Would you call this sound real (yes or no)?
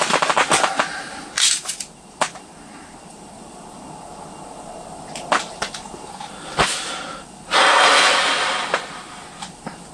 yes